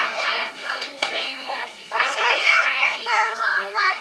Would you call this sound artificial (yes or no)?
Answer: yes